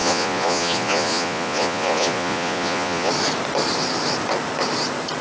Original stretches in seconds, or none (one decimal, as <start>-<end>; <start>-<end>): 3.1-5.2